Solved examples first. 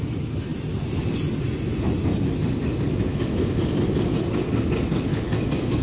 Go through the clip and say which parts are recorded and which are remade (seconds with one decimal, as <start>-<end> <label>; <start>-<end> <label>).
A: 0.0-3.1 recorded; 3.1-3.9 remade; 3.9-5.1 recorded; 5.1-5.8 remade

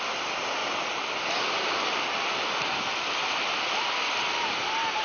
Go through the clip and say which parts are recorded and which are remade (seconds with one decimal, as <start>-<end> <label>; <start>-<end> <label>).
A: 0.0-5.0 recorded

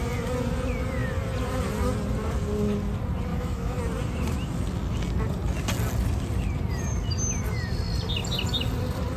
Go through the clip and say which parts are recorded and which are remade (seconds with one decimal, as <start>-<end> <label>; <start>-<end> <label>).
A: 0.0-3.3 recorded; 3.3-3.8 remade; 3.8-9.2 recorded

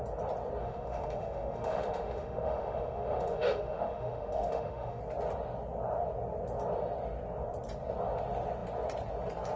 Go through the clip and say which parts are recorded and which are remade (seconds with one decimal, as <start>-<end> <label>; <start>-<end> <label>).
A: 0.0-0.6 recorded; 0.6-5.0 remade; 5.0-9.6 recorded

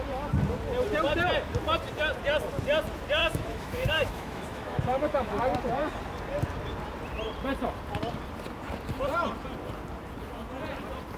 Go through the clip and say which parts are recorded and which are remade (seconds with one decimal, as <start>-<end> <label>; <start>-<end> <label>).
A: 0.0-3.2 recorded; 3.2-5.4 remade; 5.4-11.2 recorded